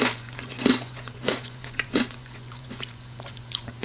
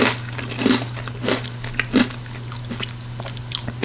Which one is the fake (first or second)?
first